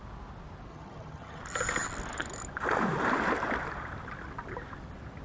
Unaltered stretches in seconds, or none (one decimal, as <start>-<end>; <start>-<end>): 0.0-0.7; 1.4-5.2